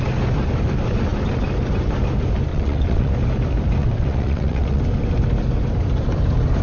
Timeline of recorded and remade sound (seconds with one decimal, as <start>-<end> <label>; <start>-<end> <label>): 0.0-2.5 recorded; 2.5-3.1 remade; 3.1-3.8 recorded; 3.8-4.8 remade; 4.8-6.6 recorded